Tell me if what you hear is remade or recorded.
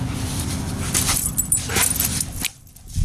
remade